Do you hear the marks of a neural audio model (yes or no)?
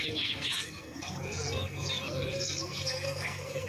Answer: yes